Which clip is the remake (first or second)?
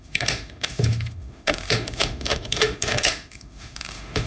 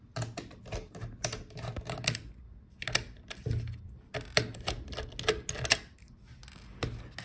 first